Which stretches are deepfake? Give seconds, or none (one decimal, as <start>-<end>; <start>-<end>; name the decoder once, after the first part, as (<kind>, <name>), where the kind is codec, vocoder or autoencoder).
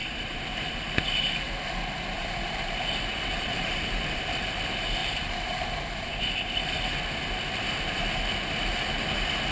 0.0-1.5 (vocoder, BigVGAN v2); 2.2-4.0; 5.0-6.2